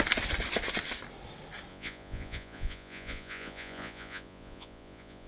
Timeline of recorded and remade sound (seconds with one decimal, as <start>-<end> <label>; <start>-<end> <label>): 0.0-1.7 recorded; 1.7-5.3 remade